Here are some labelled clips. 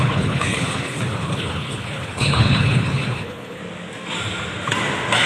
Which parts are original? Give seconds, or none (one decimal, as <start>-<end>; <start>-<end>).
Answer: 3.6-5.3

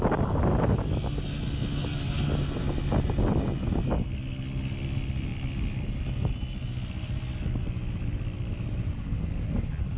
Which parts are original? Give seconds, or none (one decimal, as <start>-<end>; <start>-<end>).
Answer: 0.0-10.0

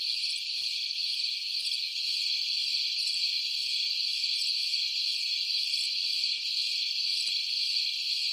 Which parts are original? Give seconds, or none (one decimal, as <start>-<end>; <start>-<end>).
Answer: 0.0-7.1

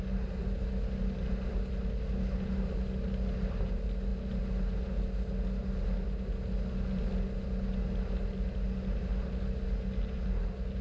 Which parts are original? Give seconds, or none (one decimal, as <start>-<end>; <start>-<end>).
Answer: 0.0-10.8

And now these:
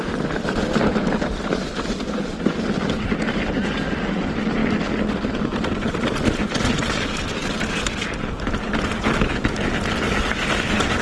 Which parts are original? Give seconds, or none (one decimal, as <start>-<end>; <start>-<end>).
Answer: 0.0-11.0

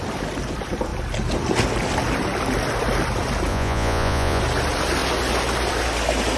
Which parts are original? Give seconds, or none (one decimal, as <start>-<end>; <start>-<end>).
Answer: 0.0-3.5; 4.4-6.4

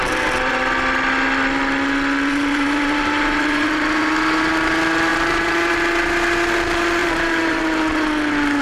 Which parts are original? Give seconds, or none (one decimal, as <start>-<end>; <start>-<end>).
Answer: 0.0-2.3; 4.0-5.1; 5.7-7.0; 7.6-8.6

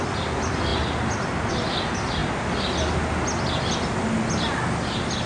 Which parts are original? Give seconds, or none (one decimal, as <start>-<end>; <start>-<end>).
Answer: 0.0-5.3